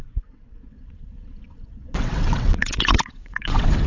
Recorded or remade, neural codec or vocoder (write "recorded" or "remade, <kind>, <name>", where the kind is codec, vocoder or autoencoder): remade, vocoder, WaveNeXt